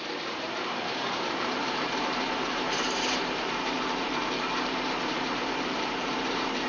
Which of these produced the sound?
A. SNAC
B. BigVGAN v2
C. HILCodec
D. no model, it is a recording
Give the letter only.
B